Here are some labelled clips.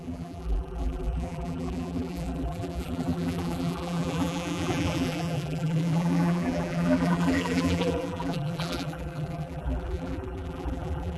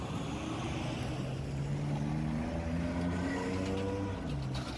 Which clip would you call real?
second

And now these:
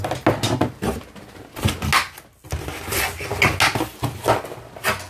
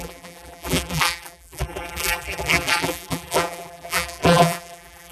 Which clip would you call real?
first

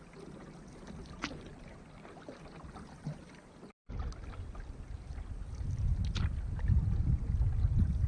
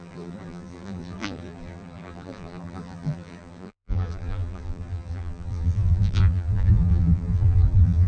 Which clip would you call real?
first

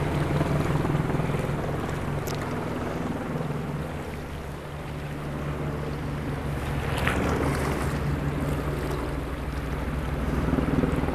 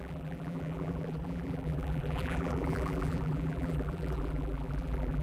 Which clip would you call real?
first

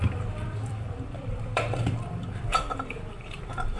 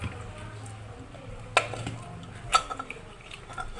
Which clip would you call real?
second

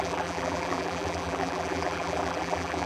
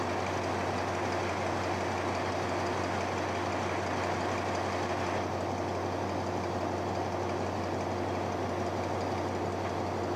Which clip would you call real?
second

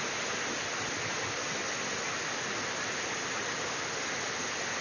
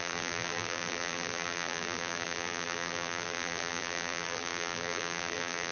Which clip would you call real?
first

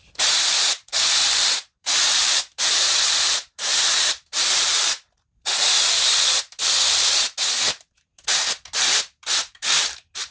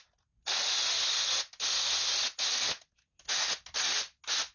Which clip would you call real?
second